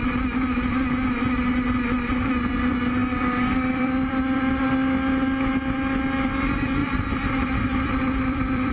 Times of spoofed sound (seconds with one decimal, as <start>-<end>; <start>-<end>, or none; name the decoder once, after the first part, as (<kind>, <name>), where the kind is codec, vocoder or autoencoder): 3.0-4.7 (vocoder, BigVGAN v2); 6.8-8.7